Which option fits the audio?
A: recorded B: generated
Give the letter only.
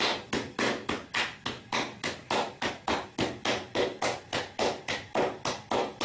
A